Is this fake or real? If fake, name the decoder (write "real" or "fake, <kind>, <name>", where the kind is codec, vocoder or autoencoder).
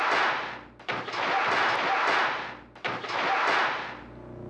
real